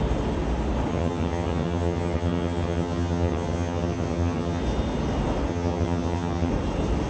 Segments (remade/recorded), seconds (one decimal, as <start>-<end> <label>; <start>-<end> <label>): 0.0-0.9 recorded; 0.9-4.6 remade; 4.6-5.5 recorded; 5.5-6.5 remade; 6.5-7.1 recorded